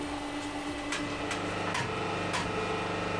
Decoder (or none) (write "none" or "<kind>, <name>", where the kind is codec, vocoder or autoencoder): none